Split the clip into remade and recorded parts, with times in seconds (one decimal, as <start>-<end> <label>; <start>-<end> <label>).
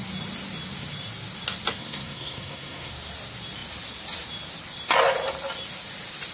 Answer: 0.0-1.8 recorded; 1.8-2.9 remade; 2.9-6.3 recorded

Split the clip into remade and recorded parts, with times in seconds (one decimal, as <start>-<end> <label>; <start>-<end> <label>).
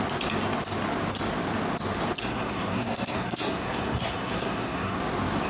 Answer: 0.0-2.2 recorded; 2.2-5.0 remade; 5.0-5.5 recorded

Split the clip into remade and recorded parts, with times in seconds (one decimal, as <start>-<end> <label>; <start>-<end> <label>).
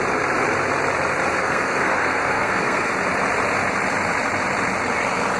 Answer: 0.0-1.4 recorded; 1.4-2.9 remade; 2.9-5.4 recorded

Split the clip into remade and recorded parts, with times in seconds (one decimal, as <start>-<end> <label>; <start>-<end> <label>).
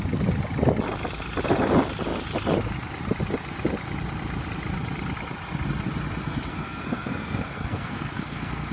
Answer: 0.0-6.5 recorded; 6.5-8.7 remade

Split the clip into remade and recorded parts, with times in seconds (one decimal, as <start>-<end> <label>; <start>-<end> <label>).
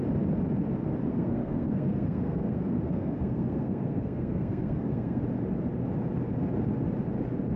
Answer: 0.0-1.1 recorded; 1.1-5.2 remade; 5.2-7.6 recorded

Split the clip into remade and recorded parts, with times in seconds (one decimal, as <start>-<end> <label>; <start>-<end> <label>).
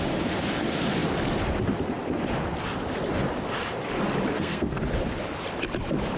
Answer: 0.0-4.3 recorded; 4.3-4.8 remade; 4.8-6.2 recorded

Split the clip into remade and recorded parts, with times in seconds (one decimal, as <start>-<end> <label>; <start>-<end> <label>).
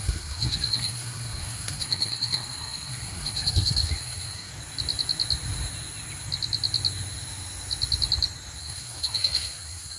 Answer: 0.0-4.5 remade; 4.5-8.6 recorded; 8.6-10.0 remade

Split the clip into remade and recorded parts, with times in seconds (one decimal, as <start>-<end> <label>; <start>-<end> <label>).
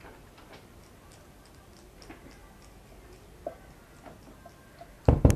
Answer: 0.0-5.4 recorded